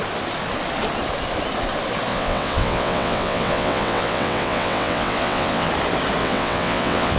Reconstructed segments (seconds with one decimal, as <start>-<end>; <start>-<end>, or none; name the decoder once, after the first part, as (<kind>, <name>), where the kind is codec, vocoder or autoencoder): 2.1-5.7 (vocoder, WaveNeXt); 6.2-7.2